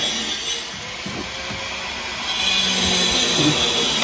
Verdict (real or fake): real